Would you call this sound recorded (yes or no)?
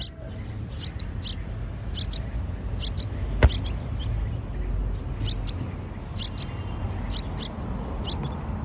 yes